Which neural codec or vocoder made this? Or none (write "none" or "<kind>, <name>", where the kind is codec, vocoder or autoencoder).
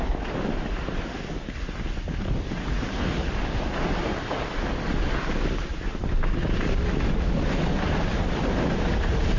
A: none